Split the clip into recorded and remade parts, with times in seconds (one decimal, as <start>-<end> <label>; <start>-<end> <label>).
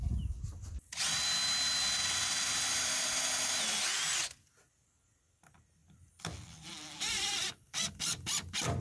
0.0-8.8 recorded